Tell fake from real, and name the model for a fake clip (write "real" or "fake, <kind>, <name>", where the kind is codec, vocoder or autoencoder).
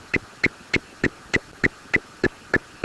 real